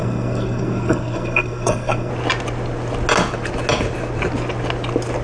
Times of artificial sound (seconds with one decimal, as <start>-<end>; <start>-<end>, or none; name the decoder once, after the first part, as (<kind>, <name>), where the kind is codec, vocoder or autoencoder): 0.0-2.1 (codec, SNAC)